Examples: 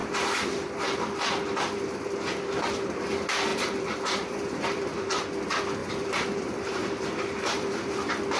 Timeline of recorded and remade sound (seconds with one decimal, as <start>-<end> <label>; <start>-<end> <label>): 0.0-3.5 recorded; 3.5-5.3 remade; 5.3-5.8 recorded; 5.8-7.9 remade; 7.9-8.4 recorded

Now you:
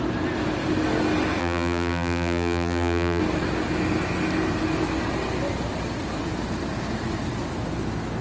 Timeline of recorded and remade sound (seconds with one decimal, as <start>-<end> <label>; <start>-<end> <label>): 0.0-1.4 recorded; 1.4-3.2 remade; 3.2-8.2 recorded

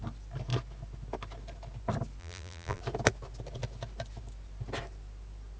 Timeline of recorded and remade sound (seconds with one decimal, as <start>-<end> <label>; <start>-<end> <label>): 0.0-2.2 recorded; 2.2-2.8 remade; 2.8-5.6 recorded